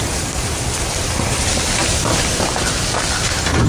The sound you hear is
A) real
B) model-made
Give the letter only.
B